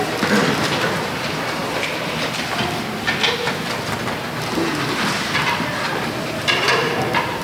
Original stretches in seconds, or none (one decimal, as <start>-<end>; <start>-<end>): 0.0-7.4